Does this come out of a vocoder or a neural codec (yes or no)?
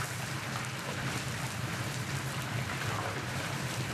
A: yes